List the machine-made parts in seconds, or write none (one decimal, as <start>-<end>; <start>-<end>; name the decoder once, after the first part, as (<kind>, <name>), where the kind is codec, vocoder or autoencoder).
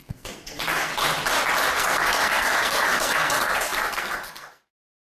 0.0-0.9 (codec, SNAC); 1.7-5.0